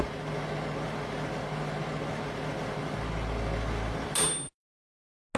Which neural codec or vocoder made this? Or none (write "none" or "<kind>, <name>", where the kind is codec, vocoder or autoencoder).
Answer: none